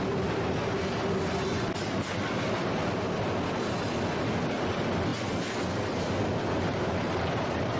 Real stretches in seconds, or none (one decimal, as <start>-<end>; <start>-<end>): 0.0-7.8